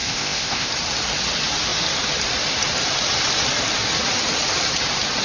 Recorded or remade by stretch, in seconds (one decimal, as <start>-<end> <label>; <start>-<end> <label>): 0.0-0.7 remade; 0.7-5.2 recorded